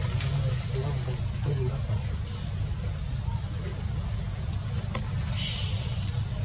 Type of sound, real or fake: real